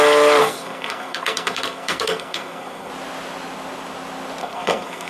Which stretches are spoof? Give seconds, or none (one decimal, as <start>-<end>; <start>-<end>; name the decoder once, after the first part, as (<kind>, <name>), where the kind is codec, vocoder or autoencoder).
0.4-2.9 (codec, SNAC); 4.4-5.1